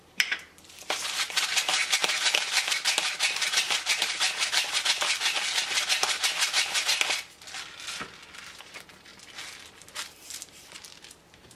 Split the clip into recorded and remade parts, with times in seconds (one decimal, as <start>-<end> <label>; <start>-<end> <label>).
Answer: 0.0-6.9 remade; 6.9-8.4 recorded; 8.4-9.1 remade; 9.1-9.9 recorded; 9.9-11.6 remade